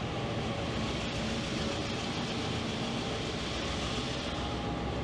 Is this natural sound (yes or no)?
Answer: yes